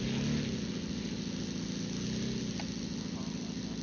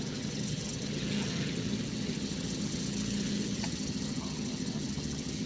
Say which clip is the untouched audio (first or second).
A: first